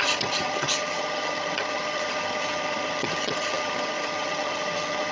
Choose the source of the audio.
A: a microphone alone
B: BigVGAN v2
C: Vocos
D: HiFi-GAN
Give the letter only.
D